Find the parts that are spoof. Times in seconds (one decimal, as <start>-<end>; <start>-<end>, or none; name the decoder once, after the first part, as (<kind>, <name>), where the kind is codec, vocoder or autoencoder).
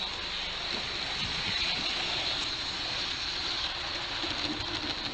1.3-4.1 (vocoder, Vocos)